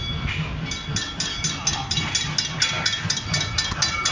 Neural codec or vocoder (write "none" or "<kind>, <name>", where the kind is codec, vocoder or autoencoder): none